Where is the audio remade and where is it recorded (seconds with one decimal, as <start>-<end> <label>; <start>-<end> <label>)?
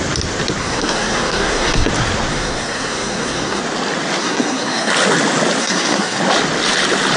0.0-0.6 recorded; 0.6-1.9 remade; 1.9-2.3 recorded; 2.3-3.6 remade; 3.6-4.2 recorded; 4.2-4.9 remade; 4.9-5.6 recorded; 5.6-6.2 remade; 6.2-7.2 recorded